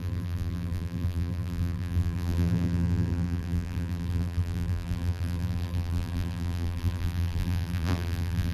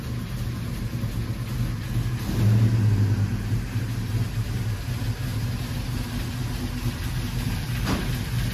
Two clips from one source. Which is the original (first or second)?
second